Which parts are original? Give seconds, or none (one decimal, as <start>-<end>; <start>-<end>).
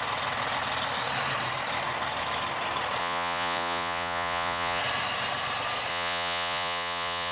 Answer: 0.0-3.0; 4.8-5.9